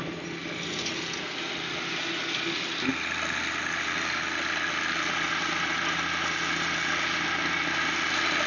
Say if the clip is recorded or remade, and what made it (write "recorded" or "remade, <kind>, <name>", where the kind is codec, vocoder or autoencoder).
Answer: recorded